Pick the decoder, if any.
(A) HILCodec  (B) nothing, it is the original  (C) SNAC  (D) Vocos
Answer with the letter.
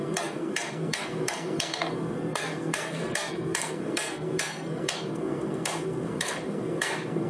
C